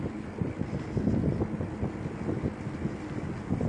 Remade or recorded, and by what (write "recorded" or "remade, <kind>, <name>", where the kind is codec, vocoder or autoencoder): recorded